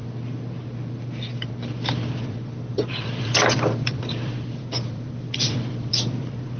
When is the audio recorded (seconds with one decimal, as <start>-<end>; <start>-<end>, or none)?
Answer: 0.0-2.2